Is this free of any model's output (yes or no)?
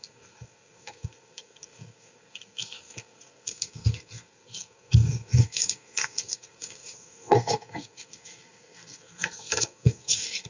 no